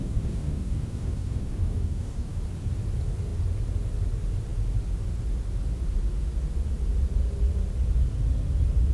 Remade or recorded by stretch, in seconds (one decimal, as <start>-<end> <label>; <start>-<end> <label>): 0.0-2.4 remade; 2.4-8.9 recorded